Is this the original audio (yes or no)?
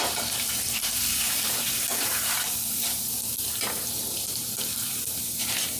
no